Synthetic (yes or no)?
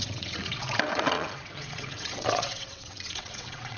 yes